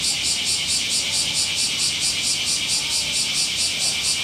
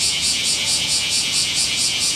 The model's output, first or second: second